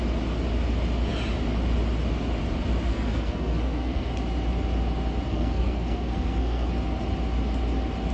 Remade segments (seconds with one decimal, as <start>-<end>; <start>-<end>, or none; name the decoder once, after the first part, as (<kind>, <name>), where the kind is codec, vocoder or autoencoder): 2.9-4.1 (codec, SNAC); 5.3-6.7